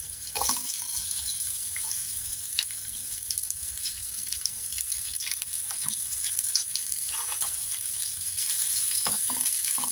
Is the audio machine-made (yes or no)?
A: yes